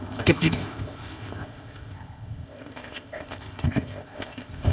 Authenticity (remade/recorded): remade